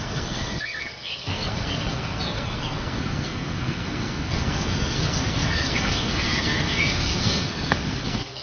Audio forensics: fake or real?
fake